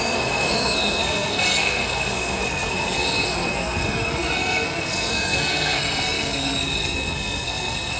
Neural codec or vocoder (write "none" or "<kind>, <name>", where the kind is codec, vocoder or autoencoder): codec, SNAC